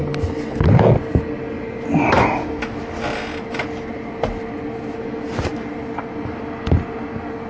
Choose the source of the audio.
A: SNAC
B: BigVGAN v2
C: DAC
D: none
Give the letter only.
D